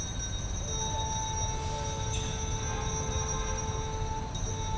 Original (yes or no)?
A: yes